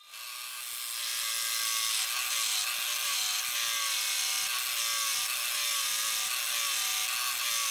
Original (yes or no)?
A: yes